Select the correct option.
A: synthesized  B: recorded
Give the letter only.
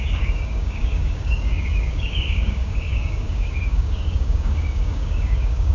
A